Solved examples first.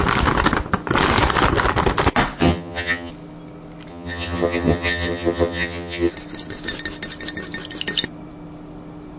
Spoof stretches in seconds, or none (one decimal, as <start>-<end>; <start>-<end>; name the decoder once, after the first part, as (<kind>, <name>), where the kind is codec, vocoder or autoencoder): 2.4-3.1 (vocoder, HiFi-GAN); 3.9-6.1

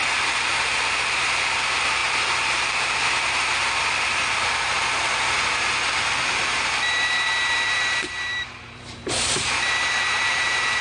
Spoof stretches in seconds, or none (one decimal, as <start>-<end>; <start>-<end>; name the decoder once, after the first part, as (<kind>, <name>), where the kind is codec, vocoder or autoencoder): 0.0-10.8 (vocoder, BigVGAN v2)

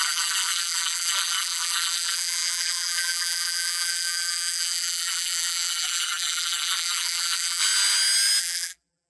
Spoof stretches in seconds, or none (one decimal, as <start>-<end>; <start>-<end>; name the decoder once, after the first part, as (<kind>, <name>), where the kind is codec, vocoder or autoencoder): 0.0-7.6 (vocoder, BigVGAN v2); 8.4-9.1

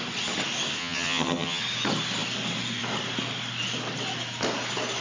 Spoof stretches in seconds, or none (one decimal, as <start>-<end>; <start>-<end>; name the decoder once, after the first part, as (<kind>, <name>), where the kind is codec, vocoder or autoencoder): 0.8-1.6 (vocoder, HiFi-GAN)

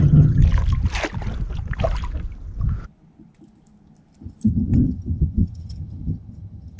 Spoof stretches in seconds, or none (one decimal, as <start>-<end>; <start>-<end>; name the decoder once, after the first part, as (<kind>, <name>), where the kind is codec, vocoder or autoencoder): 0.0-0.4 (vocoder, HiFi-GAN); 4.5-6.8

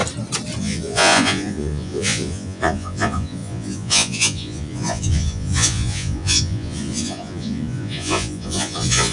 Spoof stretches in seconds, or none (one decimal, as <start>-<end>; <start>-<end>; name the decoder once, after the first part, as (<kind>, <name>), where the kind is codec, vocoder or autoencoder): 0.6-9.1 (vocoder, Vocos)

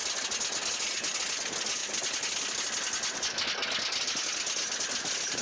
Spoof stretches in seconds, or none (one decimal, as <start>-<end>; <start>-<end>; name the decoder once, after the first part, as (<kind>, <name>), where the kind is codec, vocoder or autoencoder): none

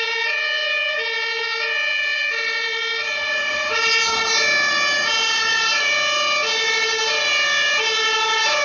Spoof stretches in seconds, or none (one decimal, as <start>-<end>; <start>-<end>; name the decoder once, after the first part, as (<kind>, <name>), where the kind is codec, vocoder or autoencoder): none